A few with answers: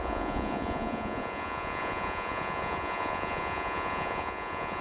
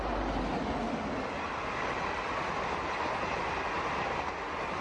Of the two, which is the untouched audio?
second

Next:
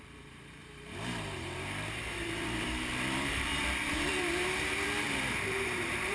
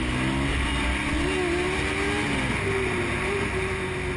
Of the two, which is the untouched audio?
second